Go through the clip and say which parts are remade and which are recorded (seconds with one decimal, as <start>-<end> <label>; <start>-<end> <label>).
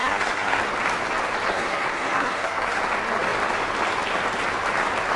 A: 0.0-0.6 remade; 0.6-1.5 recorded; 1.5-2.8 remade; 2.8-5.2 recorded